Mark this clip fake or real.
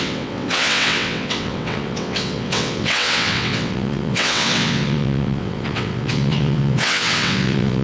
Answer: fake